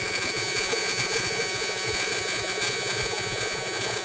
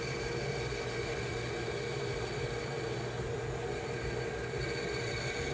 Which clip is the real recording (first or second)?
second